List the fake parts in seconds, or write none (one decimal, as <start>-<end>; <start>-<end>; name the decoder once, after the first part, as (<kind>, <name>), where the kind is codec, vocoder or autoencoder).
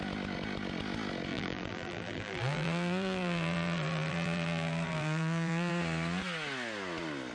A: 1.3-5.7 (vocoder, BigVGAN v2)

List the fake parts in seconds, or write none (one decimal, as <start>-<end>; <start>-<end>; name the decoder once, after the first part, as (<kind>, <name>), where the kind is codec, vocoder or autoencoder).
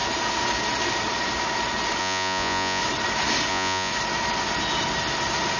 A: 2.0-2.8 (vocoder, Vocos); 3.5-3.9